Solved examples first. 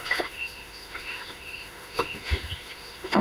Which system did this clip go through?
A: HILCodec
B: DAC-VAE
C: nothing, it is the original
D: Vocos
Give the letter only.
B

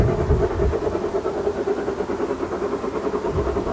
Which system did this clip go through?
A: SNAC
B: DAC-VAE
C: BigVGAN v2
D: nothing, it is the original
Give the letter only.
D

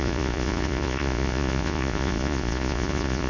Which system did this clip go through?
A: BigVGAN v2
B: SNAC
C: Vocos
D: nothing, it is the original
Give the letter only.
C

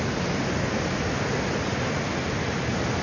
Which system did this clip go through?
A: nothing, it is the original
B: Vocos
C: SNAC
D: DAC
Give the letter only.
A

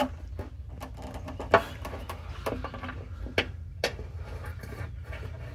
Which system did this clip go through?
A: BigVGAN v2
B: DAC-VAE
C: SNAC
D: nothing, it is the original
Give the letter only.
D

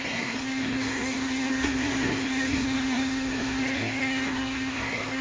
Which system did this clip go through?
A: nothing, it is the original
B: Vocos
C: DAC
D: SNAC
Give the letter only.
D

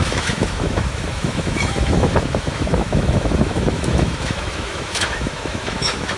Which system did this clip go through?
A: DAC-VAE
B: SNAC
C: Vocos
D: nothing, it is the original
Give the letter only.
A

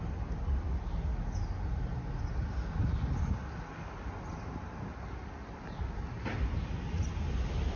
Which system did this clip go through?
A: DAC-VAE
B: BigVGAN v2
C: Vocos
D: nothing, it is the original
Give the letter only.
D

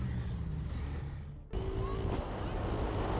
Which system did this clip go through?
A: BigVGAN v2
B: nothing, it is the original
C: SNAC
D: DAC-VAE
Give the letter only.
B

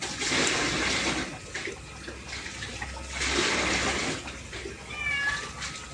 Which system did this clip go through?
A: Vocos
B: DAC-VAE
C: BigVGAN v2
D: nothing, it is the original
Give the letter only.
D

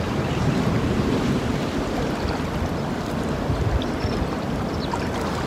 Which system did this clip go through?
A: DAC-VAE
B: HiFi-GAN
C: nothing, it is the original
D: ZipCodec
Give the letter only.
C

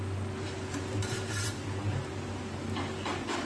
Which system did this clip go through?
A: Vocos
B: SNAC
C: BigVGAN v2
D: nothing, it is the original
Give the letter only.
D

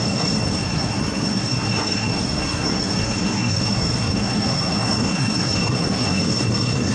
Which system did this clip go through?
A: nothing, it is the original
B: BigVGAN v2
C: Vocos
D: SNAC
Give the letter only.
D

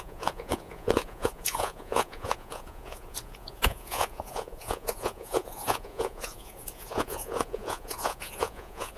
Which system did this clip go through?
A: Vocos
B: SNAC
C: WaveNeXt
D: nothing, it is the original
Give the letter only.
A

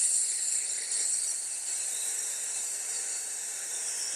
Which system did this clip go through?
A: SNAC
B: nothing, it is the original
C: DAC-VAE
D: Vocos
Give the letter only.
B